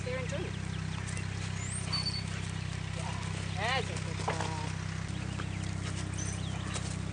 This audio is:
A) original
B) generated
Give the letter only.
A